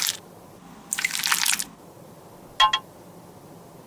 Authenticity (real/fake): real